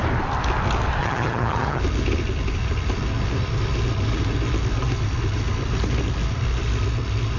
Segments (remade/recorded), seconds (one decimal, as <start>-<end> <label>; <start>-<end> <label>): 0.0-1.0 recorded; 1.0-1.8 remade; 1.8-7.4 recorded